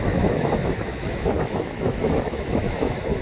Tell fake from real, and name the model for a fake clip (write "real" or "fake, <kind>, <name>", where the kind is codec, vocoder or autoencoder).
fake, autoencoder, DAC-VAE